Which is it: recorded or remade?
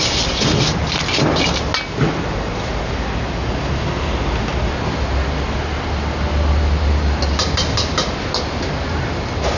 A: recorded